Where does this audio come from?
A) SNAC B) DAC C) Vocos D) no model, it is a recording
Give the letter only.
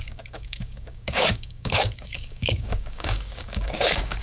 B